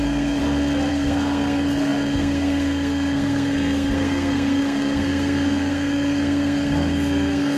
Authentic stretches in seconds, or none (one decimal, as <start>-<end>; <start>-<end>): 0.4-0.9